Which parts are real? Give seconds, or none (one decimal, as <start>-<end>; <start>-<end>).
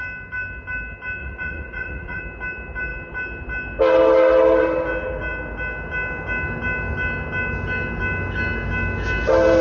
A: 0.0-1.2; 2.2-9.6